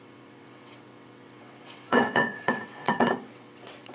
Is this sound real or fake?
fake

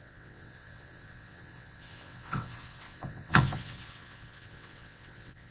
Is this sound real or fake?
fake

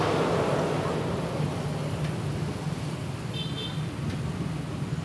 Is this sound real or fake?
real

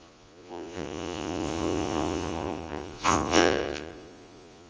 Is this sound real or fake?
fake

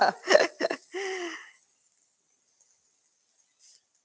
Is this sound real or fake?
real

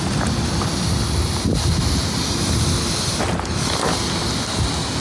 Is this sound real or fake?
real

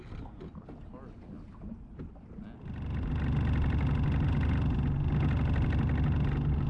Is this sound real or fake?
real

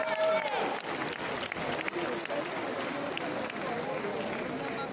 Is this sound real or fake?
real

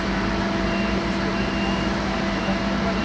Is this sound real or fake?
fake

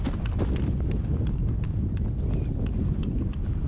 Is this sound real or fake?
real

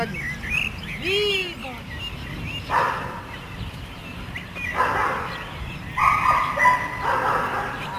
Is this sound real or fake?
real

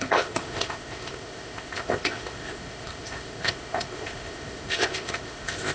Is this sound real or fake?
fake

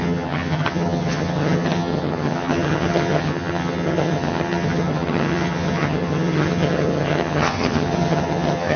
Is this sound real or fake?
fake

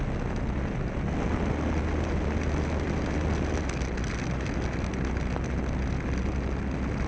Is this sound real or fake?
real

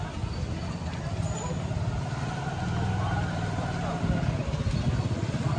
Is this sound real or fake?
real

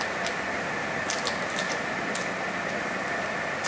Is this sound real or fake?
real